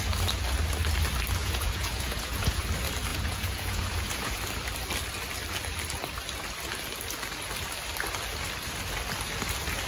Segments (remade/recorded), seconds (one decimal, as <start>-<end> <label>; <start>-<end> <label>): 0.0-1.4 recorded; 1.4-2.6 remade; 2.6-3.1 recorded; 3.1-4.4 remade; 4.4-9.9 recorded

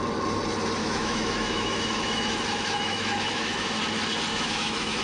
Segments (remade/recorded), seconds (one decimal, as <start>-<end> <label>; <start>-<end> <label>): 0.0-0.8 recorded; 0.8-3.8 remade; 3.8-4.3 recorded; 4.3-5.0 remade